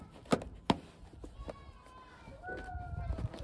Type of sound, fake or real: real